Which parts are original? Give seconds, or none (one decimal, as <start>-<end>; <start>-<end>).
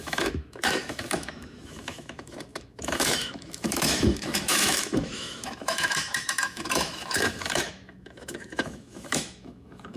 none